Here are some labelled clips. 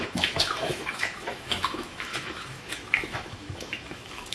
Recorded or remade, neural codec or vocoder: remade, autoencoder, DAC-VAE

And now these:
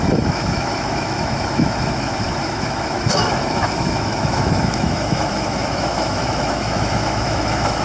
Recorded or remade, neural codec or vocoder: remade, autoencoder, DAC-VAE